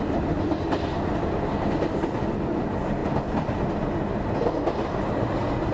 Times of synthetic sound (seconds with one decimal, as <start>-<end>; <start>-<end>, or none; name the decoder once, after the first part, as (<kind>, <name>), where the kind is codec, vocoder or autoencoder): none